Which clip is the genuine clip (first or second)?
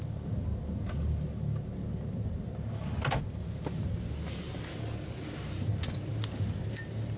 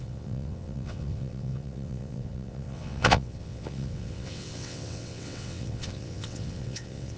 first